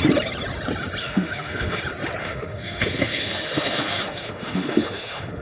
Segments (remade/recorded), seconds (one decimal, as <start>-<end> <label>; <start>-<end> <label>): 0.0-1.0 recorded; 1.0-1.8 remade; 1.8-2.2 recorded; 2.2-5.4 remade